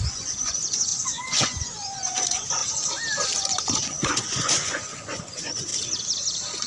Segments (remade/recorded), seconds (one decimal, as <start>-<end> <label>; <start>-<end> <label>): 0.0-2.6 remade; 2.6-3.4 recorded; 3.4-5.7 remade; 5.7-6.7 recorded